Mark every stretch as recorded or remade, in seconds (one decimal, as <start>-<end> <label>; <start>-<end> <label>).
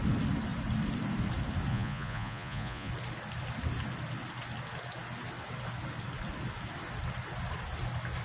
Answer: 0.0-1.7 recorded; 1.7-2.9 remade; 2.9-8.2 recorded